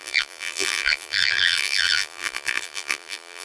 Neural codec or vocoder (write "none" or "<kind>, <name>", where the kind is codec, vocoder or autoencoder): vocoder, BigVGAN v2